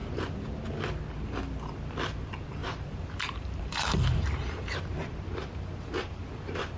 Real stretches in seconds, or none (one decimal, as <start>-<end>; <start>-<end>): 0.5-2.6